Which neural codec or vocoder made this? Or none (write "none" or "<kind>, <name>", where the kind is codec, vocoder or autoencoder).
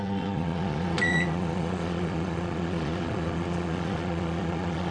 vocoder, Vocos